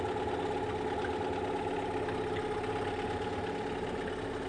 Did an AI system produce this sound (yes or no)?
no